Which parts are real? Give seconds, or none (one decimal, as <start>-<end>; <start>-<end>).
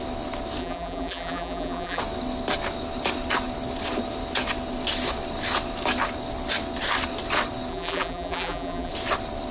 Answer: 0.0-0.6; 2.0-7.7; 8.9-9.5